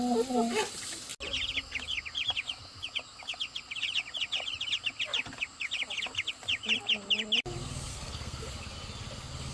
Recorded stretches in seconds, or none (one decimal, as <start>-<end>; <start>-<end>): 0.0-7.9; 8.5-9.5